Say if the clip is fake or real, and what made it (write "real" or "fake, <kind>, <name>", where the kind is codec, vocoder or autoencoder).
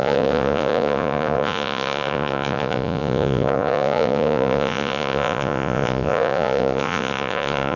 fake, vocoder, Vocos